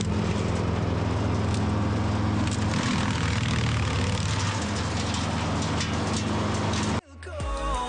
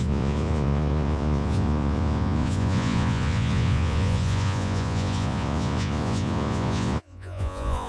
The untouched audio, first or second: first